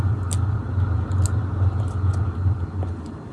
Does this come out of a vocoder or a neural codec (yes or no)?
no